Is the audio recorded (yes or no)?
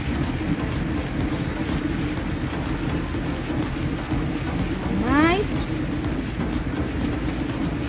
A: yes